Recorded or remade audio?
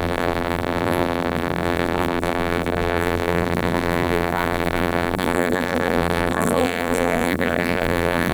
remade